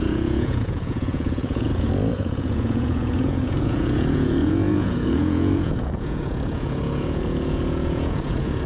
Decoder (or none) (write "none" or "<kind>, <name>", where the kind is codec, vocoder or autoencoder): vocoder, Vocos